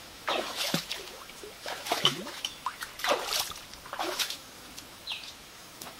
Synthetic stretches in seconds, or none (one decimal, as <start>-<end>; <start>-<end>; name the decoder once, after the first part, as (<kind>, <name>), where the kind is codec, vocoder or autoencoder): 0.0-2.9 (autoencoder, DAC-VAE); 4.0-6.0